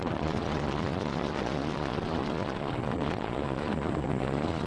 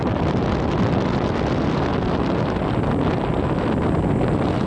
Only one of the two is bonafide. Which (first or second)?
second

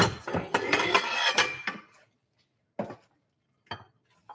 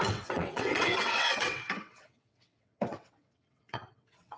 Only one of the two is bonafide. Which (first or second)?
first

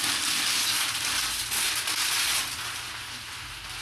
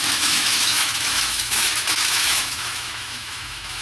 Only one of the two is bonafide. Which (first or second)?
first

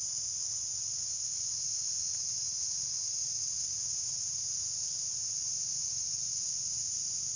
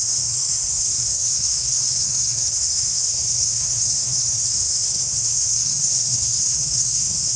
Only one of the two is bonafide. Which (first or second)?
first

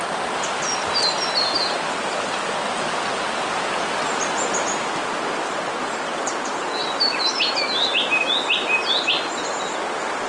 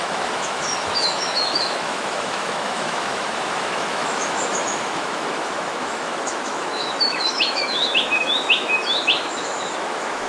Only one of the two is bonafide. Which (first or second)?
first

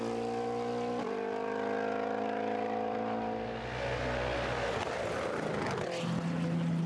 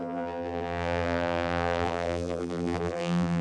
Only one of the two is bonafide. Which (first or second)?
first